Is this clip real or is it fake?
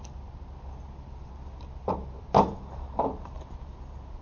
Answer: real